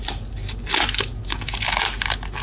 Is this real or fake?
real